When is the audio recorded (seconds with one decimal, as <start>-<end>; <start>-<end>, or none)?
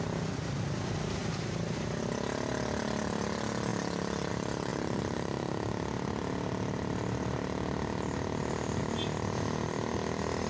0.0-1.2; 2.0-10.5